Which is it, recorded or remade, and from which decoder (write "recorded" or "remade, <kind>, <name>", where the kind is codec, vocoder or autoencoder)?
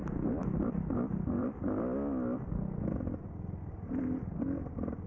recorded